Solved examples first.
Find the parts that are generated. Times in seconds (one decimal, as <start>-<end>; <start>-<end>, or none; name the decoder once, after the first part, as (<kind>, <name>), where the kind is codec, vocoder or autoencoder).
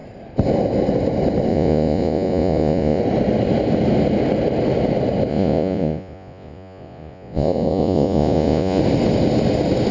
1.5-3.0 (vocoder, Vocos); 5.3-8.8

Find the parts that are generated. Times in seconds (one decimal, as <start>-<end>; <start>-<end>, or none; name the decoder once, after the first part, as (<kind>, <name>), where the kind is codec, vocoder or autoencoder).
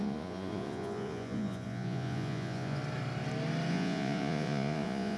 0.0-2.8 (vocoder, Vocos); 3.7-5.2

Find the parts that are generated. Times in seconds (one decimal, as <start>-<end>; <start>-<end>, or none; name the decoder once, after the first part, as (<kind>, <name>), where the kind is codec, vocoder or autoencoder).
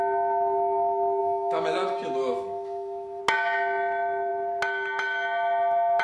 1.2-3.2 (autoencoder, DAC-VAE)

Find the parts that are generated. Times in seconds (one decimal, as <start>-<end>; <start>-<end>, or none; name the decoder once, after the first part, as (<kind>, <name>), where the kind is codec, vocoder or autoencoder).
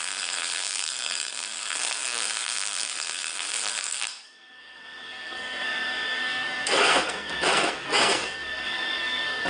0.0-9.5 (codec, SNAC)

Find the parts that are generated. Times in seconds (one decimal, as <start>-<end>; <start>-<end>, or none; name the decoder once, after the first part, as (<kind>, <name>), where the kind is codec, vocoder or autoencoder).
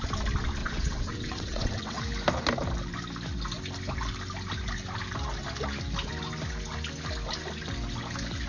0.6-2.0 (vocoder, WaveNeXt)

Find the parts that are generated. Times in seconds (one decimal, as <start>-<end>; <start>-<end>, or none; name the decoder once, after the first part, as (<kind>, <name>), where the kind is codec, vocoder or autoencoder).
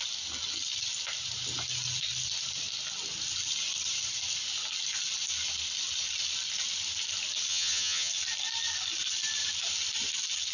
7.5-8.1 (vocoder, HiFi-GAN)